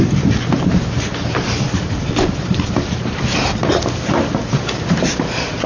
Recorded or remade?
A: remade